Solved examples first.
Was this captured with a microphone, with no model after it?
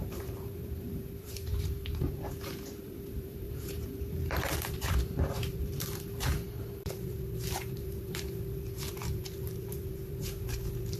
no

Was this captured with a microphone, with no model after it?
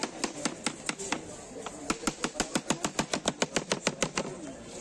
yes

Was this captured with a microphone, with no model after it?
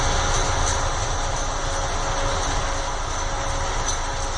yes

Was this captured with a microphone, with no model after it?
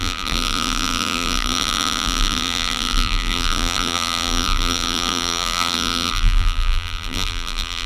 no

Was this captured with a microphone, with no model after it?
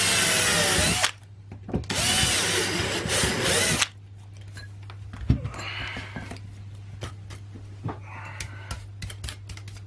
yes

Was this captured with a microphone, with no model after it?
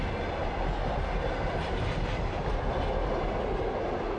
yes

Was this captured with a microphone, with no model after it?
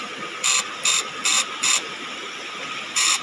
no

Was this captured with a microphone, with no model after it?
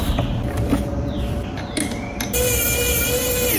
no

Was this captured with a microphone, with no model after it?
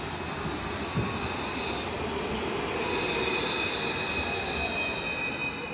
yes